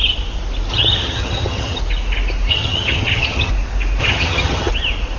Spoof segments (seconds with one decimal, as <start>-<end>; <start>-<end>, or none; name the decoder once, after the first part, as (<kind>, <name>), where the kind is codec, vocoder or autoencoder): 0.7-1.8 (vocoder, HiFi-GAN); 2.5-3.5; 4.0-4.7